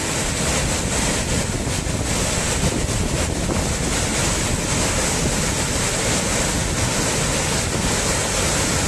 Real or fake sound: real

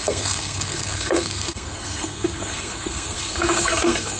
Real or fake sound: fake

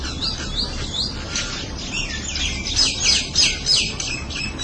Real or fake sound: real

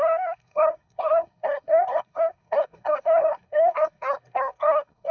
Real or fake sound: fake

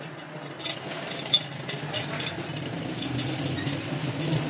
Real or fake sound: real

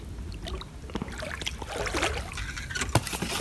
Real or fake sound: real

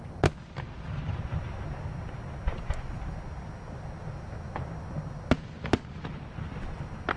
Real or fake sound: real